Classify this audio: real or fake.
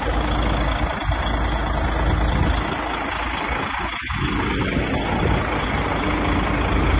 real